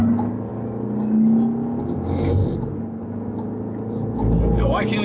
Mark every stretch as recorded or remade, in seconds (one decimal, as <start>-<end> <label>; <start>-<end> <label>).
0.0-5.0 recorded